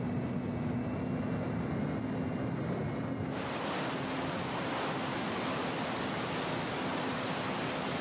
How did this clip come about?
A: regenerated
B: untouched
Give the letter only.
B